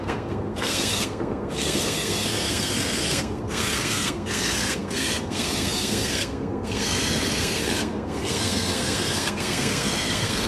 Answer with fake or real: fake